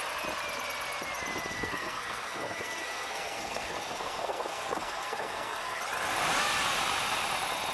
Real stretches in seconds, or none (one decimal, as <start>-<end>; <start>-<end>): 0.0-1.5; 5.8-7.7